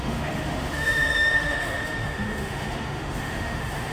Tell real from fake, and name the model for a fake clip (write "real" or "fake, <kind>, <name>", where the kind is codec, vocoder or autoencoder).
fake, autoencoder, DAC-VAE